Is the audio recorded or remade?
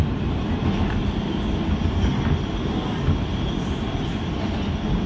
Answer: recorded